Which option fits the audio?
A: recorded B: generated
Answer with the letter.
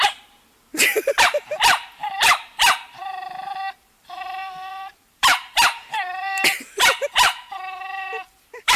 B